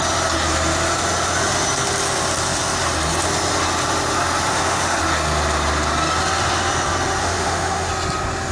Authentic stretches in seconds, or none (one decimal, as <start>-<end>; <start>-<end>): 0.0-4.5; 5.0-7.2; 7.9-8.5